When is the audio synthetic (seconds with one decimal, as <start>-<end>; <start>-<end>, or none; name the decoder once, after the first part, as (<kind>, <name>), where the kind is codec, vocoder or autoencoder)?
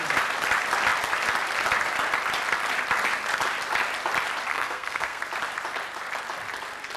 4.5-5.2 (codec, SNAC)